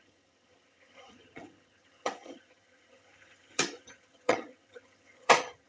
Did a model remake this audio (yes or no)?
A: yes